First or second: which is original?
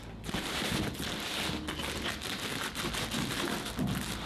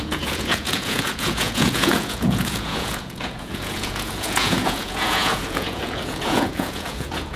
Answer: first